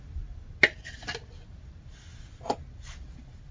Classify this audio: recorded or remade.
recorded